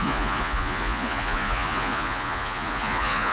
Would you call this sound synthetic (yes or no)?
yes